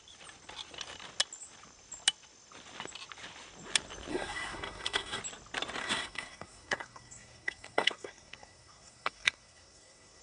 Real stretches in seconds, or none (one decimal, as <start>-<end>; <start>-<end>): 0.0-4.1; 5.2-5.8